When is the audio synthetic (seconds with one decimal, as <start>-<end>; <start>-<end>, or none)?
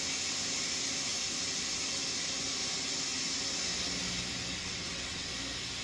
4.6-5.3